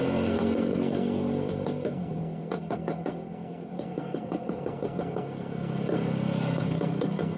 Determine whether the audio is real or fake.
fake